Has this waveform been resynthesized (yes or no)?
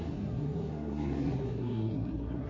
yes